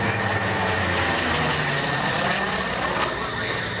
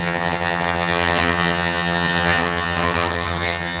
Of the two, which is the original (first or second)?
first